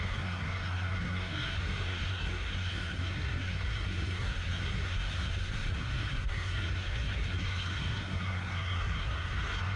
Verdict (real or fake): fake